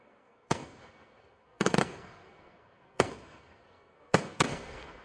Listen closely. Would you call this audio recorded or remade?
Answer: remade